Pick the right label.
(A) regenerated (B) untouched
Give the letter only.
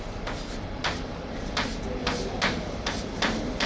B